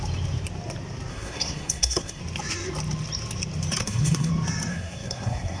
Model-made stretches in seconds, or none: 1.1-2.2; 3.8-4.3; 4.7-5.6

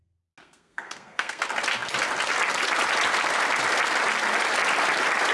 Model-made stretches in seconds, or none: 0.4-1.4

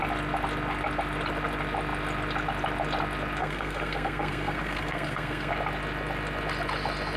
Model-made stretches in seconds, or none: 3.4-5.5

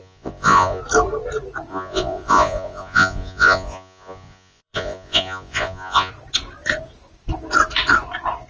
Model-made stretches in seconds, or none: 0.0-0.8; 1.7-6.1

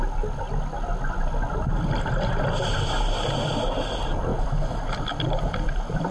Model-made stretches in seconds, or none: none

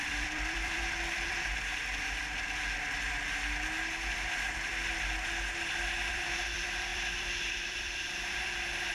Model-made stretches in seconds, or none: 0.0-1.8; 6.1-8.9

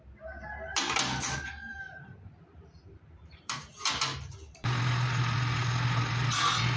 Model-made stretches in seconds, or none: 0.7-3.6